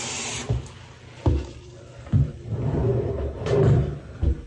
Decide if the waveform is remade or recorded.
recorded